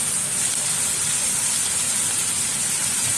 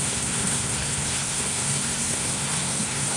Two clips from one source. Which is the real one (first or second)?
first